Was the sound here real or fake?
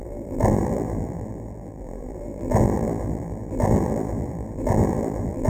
fake